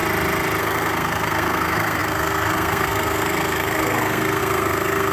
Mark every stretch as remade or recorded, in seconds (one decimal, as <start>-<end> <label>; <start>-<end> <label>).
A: 0.0-0.6 recorded; 0.6-5.1 remade

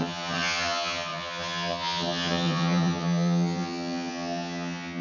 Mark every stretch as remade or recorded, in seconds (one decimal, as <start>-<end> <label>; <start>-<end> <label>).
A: 0.0-5.0 remade